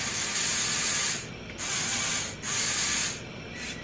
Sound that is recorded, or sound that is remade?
recorded